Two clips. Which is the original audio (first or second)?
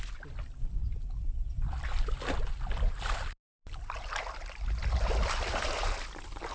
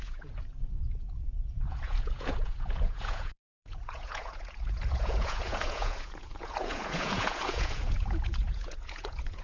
first